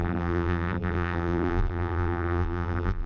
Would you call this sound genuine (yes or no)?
no